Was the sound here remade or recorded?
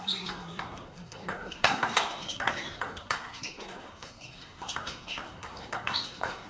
remade